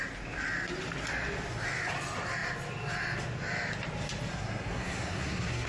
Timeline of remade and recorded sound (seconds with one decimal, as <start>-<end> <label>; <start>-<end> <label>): 0.0-4.3 recorded; 4.3-5.7 remade